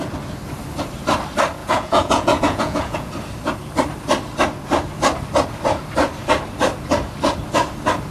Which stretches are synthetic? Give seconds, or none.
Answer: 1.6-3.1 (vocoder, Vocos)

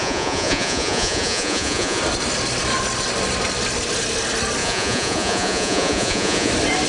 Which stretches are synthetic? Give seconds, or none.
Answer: 0.0-2.0 (vocoder, Vocos); 4.6-6.5